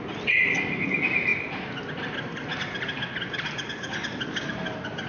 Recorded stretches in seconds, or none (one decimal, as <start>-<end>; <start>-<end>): 0.0-5.1